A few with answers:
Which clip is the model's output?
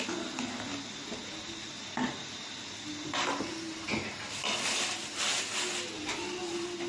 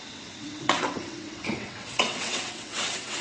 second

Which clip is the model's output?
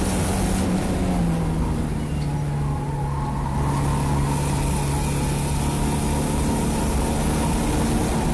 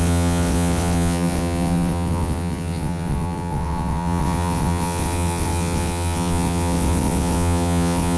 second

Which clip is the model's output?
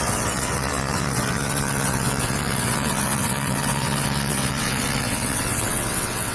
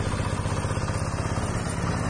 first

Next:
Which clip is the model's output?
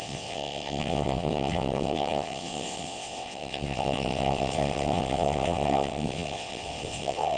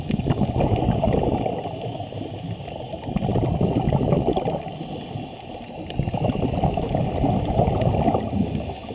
first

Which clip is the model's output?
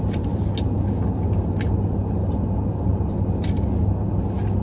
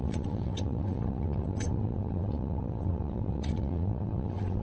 second